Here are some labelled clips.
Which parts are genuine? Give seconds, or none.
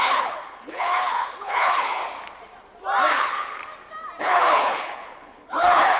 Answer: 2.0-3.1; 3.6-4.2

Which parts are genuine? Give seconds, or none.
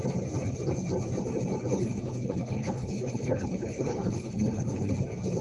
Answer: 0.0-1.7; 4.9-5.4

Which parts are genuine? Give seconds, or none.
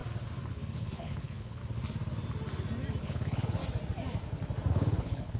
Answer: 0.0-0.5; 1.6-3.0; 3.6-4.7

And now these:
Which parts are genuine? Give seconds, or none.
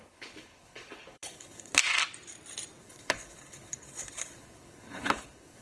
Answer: 1.7-2.8